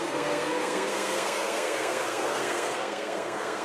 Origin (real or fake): fake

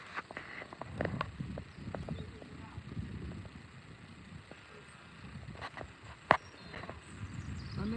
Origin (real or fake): real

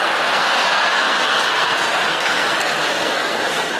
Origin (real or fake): fake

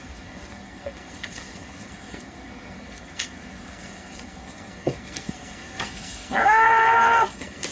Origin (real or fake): fake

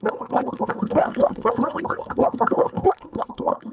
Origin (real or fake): fake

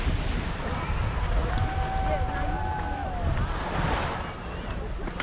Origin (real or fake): real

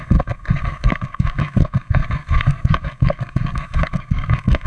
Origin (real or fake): fake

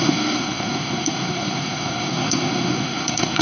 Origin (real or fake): fake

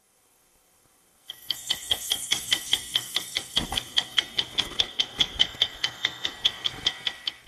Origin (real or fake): fake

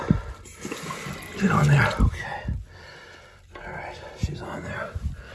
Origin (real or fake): real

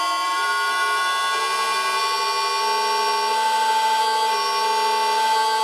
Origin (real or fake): real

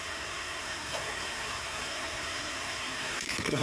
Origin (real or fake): fake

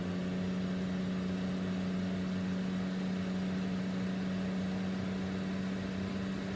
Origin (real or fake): real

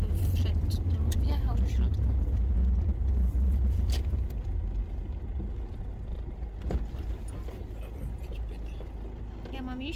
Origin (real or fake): real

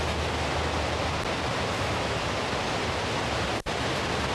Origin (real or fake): real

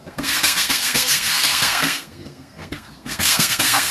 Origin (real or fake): fake